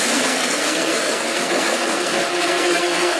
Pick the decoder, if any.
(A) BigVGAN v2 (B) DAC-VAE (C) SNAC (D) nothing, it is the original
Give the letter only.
C